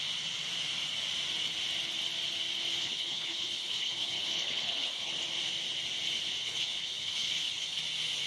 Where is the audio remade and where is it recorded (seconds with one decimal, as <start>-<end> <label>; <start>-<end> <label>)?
0.0-2.8 recorded; 2.8-5.1 remade; 5.1-6.4 recorded; 6.4-7.8 remade; 7.8-8.3 recorded